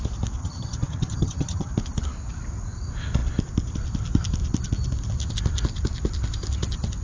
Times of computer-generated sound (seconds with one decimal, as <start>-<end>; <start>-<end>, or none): 0.4-1.7